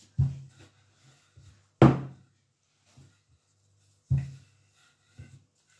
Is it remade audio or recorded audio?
recorded